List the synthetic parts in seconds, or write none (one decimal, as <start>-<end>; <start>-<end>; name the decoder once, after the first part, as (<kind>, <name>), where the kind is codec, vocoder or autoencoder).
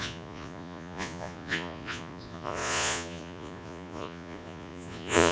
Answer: 0.0-5.3 (vocoder, Vocos)